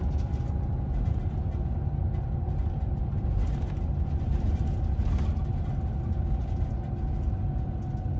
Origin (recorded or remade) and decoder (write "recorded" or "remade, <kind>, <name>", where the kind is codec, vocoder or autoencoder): recorded